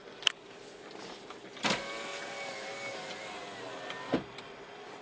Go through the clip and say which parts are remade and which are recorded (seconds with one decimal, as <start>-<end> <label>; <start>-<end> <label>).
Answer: 0.0-5.0 recorded